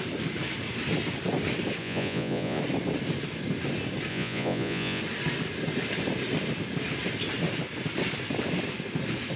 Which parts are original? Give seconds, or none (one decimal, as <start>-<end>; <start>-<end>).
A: 0.0-1.8; 2.6-4.1; 5.0-9.4